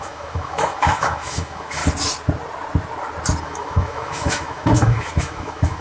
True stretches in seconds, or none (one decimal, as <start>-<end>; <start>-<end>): 1.8-3.4